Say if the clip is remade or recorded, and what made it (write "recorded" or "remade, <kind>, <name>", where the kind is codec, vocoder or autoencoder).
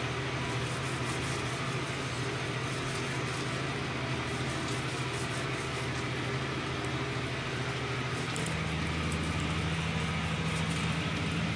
recorded